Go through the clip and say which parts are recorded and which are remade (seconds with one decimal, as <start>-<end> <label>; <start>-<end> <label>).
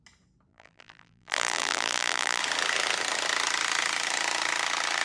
0.0-0.5 recorded; 0.5-2.4 remade; 2.4-5.0 recorded